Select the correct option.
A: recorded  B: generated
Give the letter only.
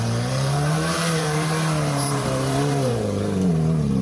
B